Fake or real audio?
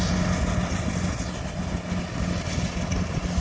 real